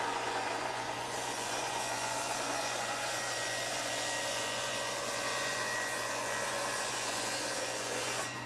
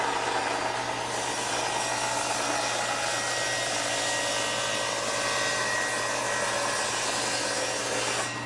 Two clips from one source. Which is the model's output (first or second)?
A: first